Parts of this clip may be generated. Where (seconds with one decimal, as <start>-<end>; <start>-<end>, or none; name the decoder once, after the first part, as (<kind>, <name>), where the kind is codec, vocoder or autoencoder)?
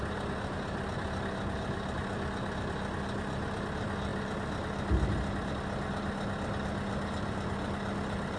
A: none